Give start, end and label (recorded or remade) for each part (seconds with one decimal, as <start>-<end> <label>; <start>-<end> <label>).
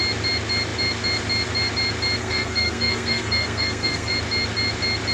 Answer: 0.0-2.2 recorded; 2.2-4.1 remade; 4.1-5.1 recorded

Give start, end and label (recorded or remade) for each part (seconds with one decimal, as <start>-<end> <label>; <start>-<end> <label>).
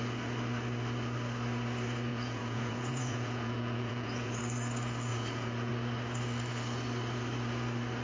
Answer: 0.0-2.1 recorded; 2.1-4.4 remade; 4.4-5.1 recorded; 5.1-5.7 remade; 5.7-8.0 recorded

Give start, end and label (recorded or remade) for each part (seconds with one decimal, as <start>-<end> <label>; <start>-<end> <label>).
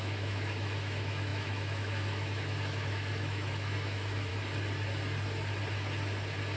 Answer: 0.0-4.3 remade; 4.3-6.6 recorded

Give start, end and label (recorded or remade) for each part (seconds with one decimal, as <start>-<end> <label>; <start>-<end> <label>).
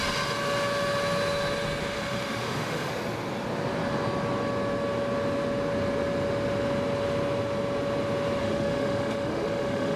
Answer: 0.0-1.8 recorded; 1.8-2.9 remade; 2.9-8.4 recorded; 8.4-10.0 remade